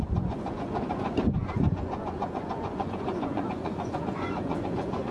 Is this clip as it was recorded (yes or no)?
no